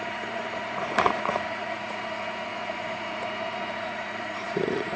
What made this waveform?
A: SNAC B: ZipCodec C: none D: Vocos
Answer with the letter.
D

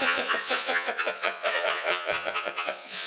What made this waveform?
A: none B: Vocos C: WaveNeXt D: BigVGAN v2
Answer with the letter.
B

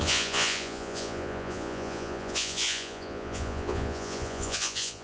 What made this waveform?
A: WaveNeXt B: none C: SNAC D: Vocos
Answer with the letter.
D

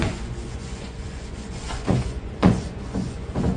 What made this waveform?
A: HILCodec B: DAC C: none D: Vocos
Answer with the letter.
D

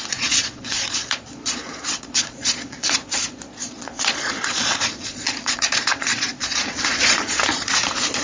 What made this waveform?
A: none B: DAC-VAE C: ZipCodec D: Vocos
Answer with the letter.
D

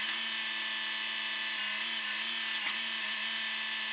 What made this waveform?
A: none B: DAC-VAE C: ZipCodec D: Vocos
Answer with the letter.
A